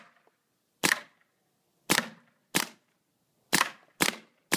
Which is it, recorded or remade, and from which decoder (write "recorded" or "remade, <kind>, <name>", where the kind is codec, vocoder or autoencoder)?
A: recorded